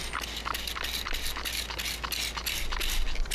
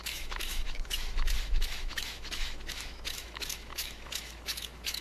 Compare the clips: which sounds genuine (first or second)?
first